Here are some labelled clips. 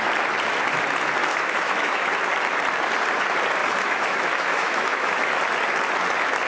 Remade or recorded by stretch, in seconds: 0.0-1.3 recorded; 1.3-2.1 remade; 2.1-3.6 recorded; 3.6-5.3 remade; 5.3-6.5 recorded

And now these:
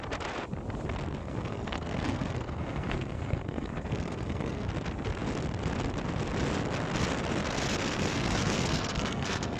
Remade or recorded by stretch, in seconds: 0.0-1.2 recorded; 1.2-4.7 remade; 4.7-7.8 recorded; 7.8-9.6 remade

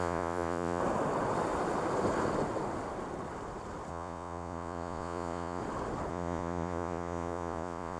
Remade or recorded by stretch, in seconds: 0.0-0.8 remade; 0.8-3.9 recorded; 3.9-5.6 remade; 5.6-6.1 recorded; 6.1-8.0 remade

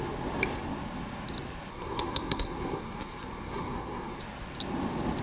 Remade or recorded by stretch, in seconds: 0.0-1.7 recorded; 1.7-4.2 remade; 4.2-5.2 recorded

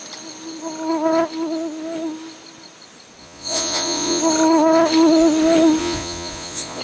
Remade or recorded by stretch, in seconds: 0.0-3.2 recorded; 3.2-4.2 remade; 4.2-5.8 recorded; 5.8-6.8 remade

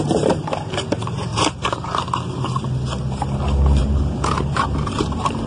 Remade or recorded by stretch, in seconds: 0.0-1.3 remade; 1.3-3.8 recorded; 3.8-5.5 remade